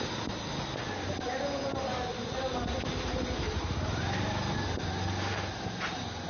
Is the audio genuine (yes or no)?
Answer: yes